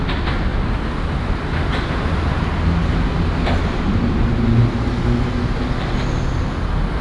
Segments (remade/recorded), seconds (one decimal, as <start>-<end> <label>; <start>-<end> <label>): 0.0-7.0 recorded